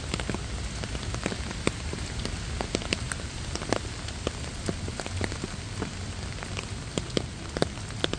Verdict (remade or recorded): recorded